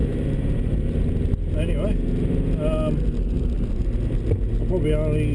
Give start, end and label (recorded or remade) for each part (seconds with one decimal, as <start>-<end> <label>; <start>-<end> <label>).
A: 0.0-1.3 remade; 1.3-5.3 recorded